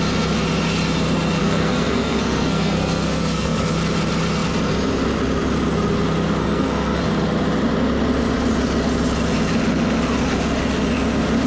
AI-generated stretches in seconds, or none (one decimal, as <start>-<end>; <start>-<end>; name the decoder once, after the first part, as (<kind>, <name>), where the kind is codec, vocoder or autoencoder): 1.4-3.7 (codec, SNAC); 6.4-7.0